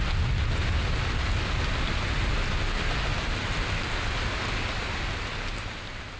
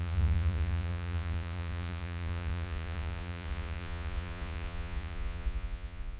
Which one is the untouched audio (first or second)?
first